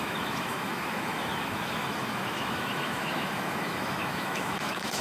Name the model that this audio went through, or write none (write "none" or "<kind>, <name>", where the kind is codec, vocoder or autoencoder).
autoencoder, DAC-VAE